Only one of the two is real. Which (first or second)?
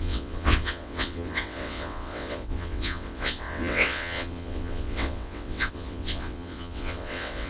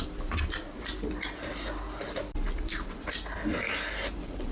second